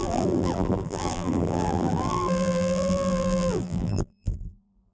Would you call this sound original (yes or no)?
no